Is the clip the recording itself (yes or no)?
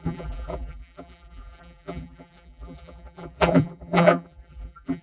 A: no